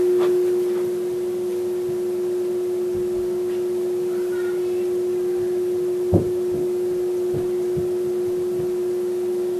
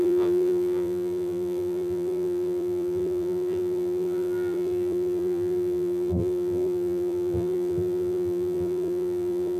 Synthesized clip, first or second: second